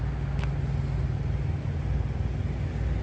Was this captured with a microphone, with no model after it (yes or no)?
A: yes